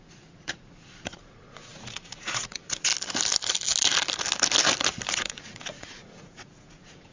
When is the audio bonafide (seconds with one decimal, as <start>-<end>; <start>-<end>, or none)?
2.9-5.1